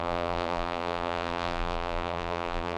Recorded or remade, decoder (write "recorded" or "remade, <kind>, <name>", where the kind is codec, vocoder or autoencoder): remade, vocoder, BigVGAN v2